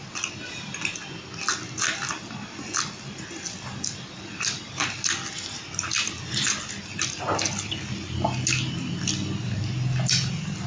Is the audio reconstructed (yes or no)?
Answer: no